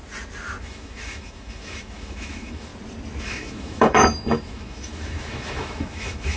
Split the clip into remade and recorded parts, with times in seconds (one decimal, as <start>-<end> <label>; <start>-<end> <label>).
0.0-0.6 recorded; 0.6-2.7 remade; 2.7-3.2 recorded; 3.2-6.4 remade